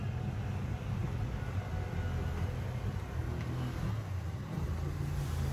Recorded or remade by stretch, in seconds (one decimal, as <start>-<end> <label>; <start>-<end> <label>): 0.0-5.5 recorded